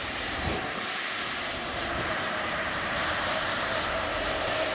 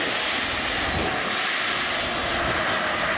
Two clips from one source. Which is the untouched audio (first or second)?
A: second